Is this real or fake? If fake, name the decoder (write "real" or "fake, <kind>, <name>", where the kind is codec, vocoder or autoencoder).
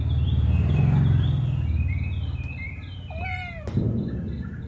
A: real